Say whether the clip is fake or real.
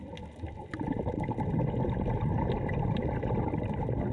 real